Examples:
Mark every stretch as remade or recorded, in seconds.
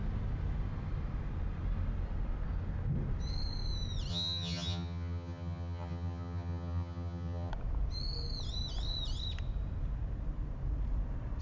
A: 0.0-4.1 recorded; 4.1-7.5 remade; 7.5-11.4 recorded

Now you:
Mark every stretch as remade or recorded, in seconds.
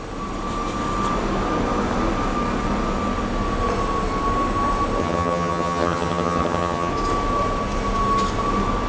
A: 0.0-5.0 recorded; 5.0-6.9 remade; 6.9-8.9 recorded